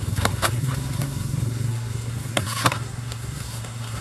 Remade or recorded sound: remade